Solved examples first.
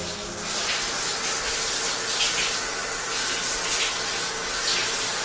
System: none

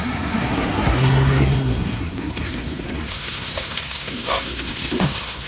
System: codec, SNAC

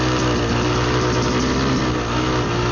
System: none